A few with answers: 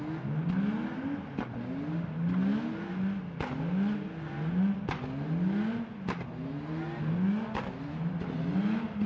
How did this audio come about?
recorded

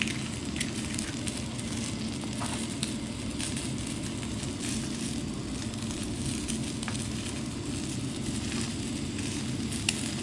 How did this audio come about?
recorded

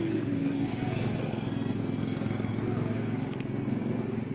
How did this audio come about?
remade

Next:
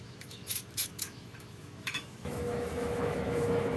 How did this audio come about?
remade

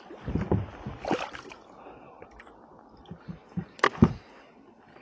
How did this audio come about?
recorded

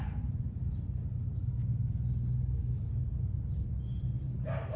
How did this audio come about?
recorded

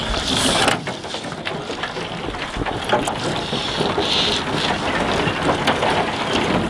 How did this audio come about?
recorded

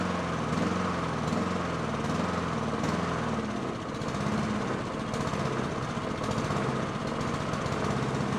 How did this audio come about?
recorded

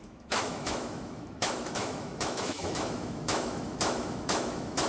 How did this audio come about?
remade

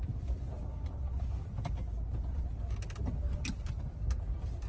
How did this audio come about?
recorded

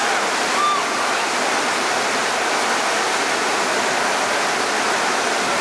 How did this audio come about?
recorded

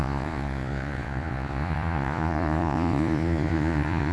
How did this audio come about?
remade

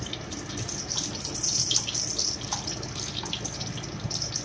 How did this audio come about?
recorded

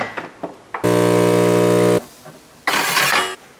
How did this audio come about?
recorded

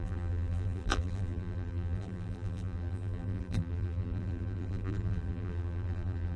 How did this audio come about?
remade